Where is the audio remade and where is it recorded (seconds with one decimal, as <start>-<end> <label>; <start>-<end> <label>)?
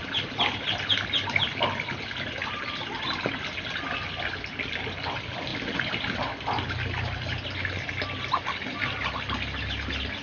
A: 0.0-10.2 recorded